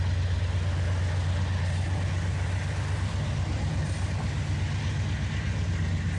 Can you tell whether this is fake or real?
real